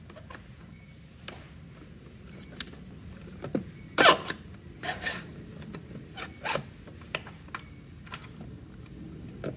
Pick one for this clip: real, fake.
real